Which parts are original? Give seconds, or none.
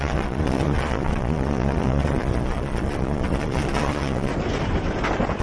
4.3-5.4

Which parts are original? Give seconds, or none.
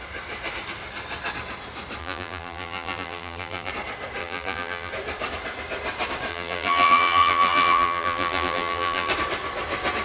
0.0-2.0; 3.7-4.2; 4.9-6.3; 9.1-10.0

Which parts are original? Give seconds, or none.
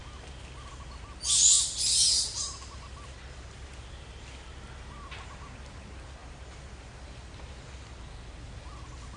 0.0-9.2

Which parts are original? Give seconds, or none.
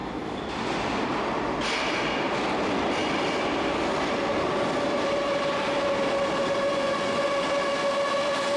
0.0-6.7; 7.3-8.6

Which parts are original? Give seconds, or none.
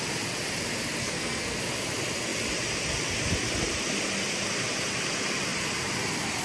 0.0-1.0; 1.6-6.4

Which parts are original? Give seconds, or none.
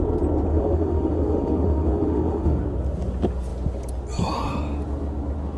0.0-0.5; 2.6-5.6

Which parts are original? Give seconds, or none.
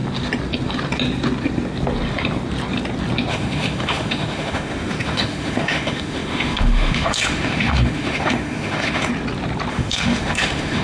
0.0-3.3; 9.1-9.7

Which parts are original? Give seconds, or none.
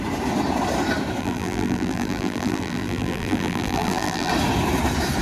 0.0-1.2; 4.3-5.2